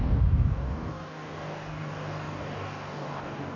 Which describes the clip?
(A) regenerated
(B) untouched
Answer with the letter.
A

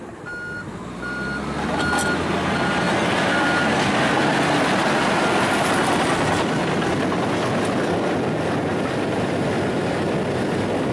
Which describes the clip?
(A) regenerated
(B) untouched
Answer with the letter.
B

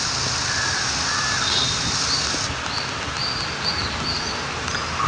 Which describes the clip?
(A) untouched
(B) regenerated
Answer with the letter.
A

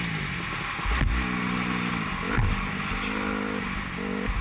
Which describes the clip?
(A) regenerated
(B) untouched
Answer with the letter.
B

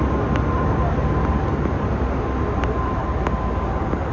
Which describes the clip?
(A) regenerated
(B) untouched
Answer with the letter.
B